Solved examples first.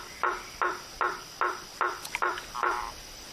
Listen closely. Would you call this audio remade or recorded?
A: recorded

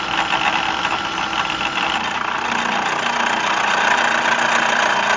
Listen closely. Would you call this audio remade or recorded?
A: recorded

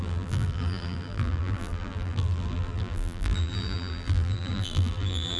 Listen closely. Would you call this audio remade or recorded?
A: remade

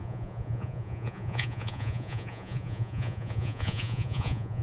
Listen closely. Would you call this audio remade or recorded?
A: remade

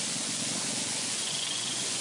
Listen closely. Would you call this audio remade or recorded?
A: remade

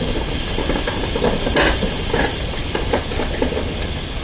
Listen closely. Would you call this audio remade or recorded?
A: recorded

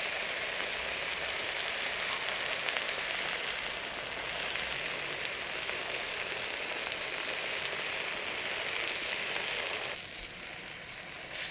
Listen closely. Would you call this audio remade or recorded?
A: recorded